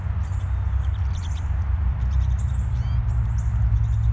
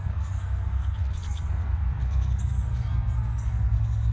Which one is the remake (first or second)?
second